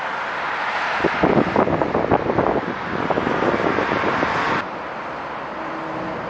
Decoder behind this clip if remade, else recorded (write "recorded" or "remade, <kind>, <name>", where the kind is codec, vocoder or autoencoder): recorded